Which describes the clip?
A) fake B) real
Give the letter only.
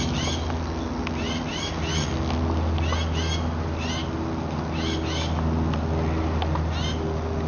B